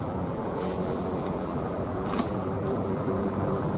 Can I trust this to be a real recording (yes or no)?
no